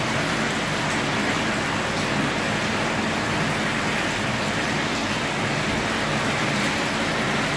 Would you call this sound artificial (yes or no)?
no